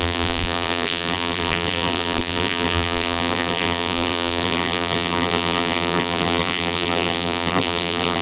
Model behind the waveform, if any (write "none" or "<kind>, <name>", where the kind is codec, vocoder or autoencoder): vocoder, BigVGAN v2